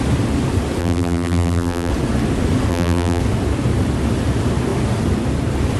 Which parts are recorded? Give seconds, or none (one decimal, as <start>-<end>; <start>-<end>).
0.0-0.8; 1.9-2.7; 3.2-5.8

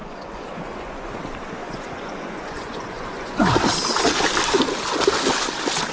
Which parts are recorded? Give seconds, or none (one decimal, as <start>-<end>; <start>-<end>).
1.2-1.6; 3.5-5.9

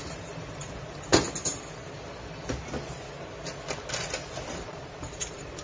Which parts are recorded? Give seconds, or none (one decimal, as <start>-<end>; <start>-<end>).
1.1-4.5

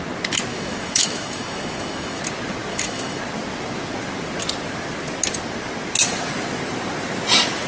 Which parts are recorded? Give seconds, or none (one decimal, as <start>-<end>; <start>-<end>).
0.0-0.5; 2.2-2.7; 3.2-7.7

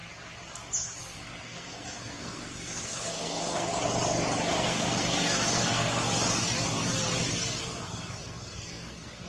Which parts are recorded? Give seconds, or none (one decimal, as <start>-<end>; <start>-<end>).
0.0-1.0; 3.7-4.5; 6.0-7.6

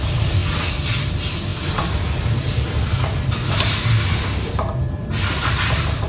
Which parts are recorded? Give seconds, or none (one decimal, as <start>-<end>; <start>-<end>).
0.0-6.1

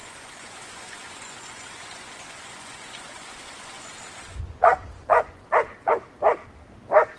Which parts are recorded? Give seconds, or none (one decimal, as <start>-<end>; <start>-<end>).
3.9-4.3; 5.9-7.2

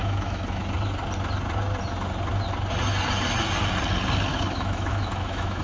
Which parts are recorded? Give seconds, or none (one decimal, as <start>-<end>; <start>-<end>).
0.6-4.3